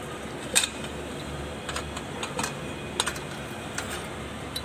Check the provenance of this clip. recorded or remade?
recorded